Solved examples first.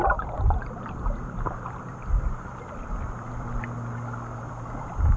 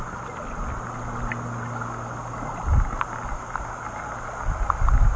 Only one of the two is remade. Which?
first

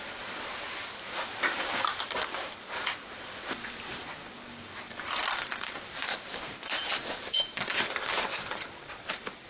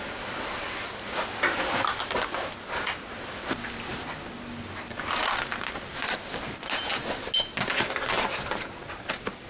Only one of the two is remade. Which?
first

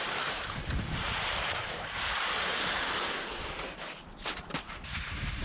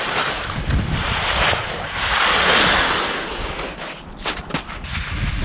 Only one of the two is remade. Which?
first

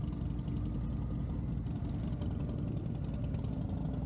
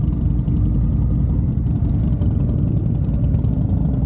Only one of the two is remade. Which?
second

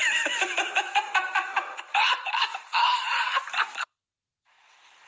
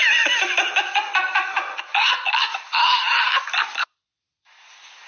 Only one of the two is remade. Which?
first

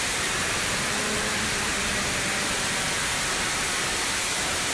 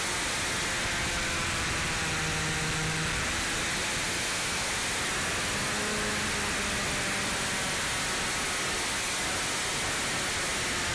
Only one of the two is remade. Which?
first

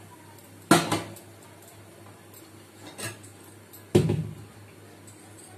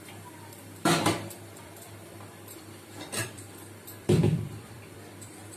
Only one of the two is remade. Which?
second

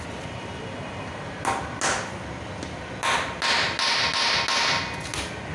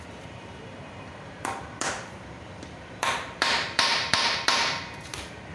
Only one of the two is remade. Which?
second